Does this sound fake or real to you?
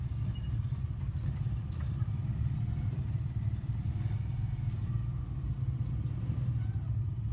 real